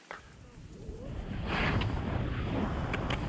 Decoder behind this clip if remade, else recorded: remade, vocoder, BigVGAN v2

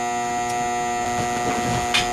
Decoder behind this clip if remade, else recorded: recorded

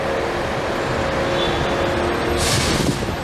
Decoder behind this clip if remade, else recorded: recorded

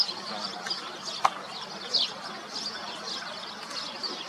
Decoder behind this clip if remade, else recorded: recorded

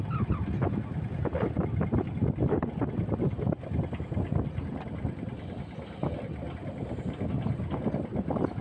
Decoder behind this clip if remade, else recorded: recorded